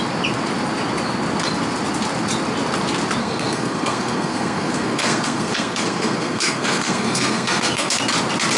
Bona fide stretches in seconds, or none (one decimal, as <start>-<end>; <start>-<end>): 0.0-3.2; 8.0-8.6